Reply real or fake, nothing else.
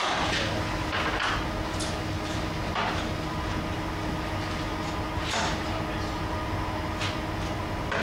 real